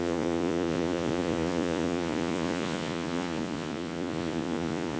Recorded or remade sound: remade